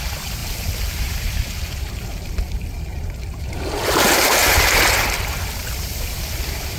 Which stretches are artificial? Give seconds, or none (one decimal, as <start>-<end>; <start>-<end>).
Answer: 0.0-4.4; 5.3-6.8